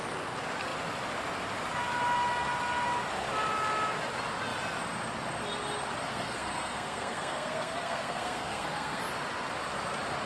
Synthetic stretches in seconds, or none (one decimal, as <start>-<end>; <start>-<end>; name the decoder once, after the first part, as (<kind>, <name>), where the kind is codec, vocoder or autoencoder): 6.1-9.0 (codec, SNAC)